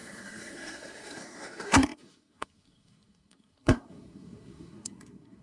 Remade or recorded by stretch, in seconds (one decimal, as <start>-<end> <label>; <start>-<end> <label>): 0.0-5.4 remade